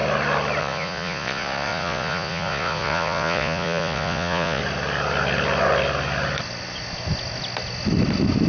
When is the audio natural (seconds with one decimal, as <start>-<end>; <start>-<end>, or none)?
0.0-0.6; 4.6-8.5